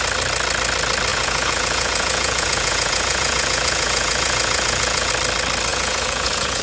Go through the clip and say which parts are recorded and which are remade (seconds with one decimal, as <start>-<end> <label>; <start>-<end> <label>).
0.0-1.1 recorded; 1.1-5.1 remade; 5.1-5.7 recorded; 5.7-6.6 remade